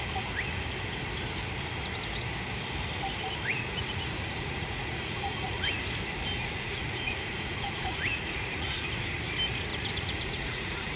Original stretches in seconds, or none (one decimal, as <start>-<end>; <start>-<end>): 0.0-3.5; 5.8-6.4; 8.8-9.7